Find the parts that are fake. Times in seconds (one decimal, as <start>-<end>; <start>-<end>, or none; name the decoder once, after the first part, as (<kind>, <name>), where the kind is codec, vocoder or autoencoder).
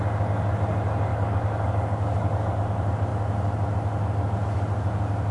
1.1-2.6 (codec, DAC)